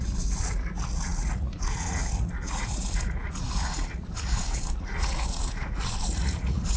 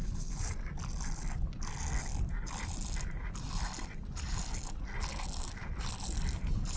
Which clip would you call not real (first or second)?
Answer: first